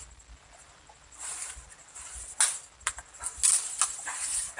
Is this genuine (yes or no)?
yes